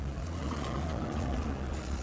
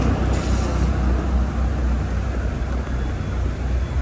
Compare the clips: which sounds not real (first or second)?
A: first